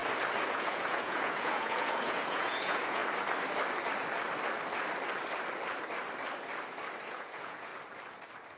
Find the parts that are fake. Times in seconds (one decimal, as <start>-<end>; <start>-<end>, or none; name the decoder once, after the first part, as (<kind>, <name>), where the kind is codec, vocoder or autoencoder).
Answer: 0.5-3.0 (vocoder, Vocos); 7.1-7.7

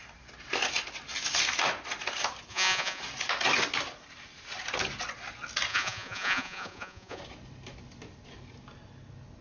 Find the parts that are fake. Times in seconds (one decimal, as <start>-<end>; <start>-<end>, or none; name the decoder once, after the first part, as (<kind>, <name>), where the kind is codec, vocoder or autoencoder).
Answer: 2.5-3.0 (vocoder, Vocos); 5.7-7.2

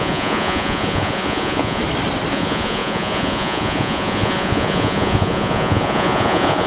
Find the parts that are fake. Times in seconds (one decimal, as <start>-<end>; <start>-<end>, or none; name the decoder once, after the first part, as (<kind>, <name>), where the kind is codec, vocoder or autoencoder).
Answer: 0.0-1.8 (vocoder, Vocos); 2.3-6.7

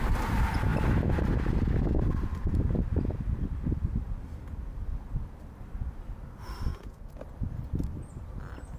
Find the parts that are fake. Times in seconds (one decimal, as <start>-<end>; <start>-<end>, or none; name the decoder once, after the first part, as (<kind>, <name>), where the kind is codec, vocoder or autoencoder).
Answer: 6.7-7.2 (vocoder, Vocos)

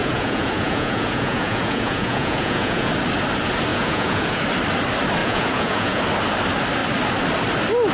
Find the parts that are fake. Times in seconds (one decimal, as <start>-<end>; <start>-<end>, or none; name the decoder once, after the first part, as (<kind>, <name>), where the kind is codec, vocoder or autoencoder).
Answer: 0.0-2.9 (vocoder, Vocos); 3.7-4.4; 5.2-6.0

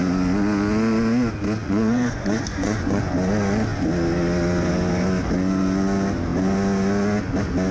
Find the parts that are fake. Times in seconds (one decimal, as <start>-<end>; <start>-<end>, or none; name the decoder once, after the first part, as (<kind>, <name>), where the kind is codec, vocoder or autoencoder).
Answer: 1.6-3.1 (vocoder, Vocos)

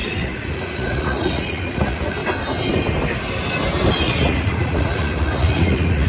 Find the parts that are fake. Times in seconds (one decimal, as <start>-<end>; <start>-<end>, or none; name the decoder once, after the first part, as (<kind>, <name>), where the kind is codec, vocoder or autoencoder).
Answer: 0.0-2.2 (vocoder, Vocos); 4.0-6.1